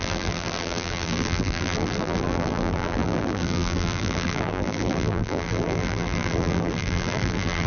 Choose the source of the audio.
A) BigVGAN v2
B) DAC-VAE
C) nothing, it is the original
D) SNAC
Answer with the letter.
A